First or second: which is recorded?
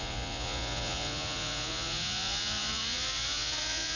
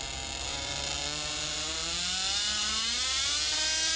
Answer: second